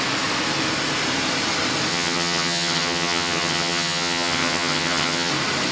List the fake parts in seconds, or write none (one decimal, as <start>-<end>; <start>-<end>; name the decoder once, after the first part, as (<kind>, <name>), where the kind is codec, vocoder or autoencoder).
1.9-5.3 (vocoder, HiFi-GAN)